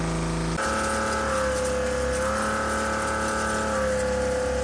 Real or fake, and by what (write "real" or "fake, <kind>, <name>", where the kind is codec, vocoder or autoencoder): real